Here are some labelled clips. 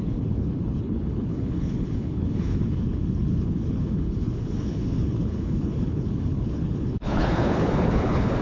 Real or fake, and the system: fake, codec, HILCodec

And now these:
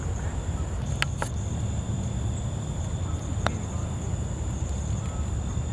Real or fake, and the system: real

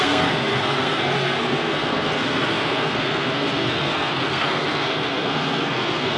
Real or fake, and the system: fake, codec, SNAC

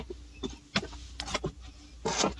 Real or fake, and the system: real